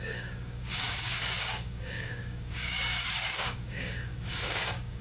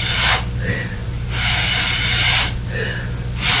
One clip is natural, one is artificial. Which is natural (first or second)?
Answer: second